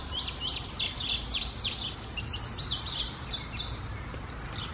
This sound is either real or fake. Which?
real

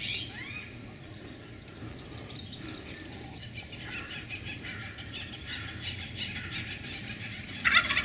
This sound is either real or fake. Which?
real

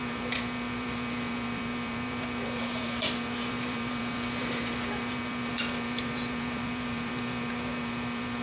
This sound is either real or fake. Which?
fake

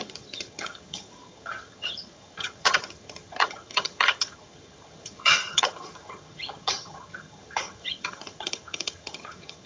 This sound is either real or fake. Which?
fake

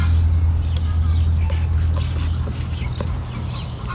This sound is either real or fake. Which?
real